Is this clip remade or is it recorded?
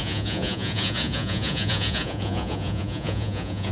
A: remade